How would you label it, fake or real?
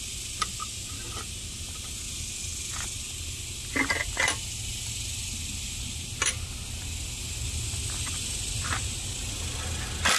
real